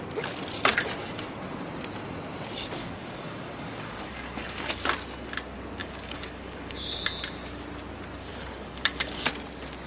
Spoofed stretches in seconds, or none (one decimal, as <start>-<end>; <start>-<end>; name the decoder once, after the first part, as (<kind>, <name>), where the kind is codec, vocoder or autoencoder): 2.8-4.7 (codec, DAC); 5.8-7.0; 8.3-9.3